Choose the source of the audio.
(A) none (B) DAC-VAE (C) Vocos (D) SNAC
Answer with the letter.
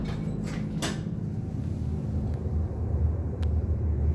A